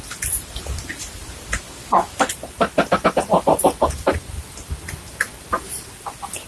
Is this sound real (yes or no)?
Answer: yes